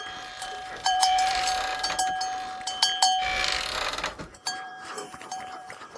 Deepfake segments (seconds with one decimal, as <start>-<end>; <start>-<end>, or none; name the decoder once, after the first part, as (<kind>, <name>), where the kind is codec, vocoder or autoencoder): 0.0-1.7 (vocoder, BigVGAN v2); 4.2-6.0